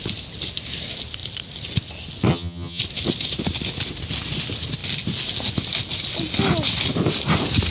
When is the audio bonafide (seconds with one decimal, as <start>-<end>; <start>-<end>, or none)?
0.0-2.3; 2.8-7.7